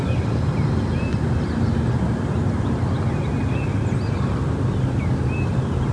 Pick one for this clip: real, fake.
real